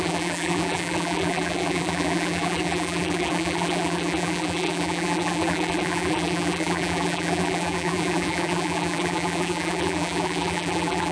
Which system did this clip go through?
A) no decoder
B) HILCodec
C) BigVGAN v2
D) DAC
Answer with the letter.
C